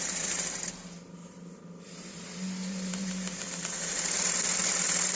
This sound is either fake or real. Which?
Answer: fake